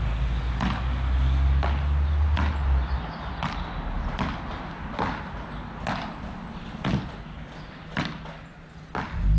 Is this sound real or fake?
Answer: real